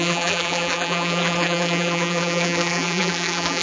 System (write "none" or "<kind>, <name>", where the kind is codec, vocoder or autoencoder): vocoder, BigVGAN v2